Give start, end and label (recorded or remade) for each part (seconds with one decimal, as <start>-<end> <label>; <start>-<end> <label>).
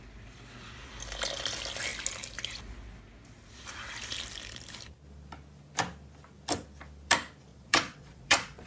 0.0-7.5 recorded; 7.5-8.7 remade